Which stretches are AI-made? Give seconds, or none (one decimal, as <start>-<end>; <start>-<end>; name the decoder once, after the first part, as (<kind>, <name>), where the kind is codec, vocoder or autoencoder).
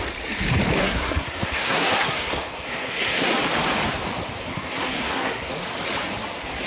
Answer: 0.8-3.3 (codec, SNAC); 4.4-5.5